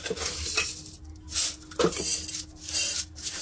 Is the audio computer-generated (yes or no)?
no